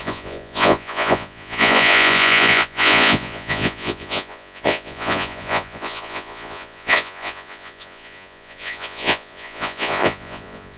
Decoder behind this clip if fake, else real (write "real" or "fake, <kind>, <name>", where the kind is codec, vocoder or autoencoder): fake, vocoder, Vocos